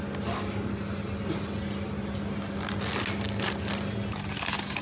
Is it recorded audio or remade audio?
recorded